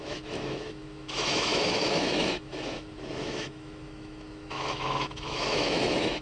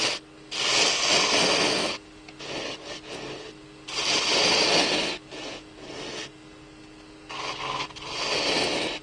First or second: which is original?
second